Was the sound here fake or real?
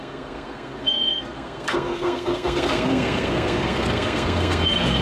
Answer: fake